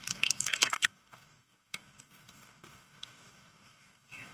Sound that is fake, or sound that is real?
fake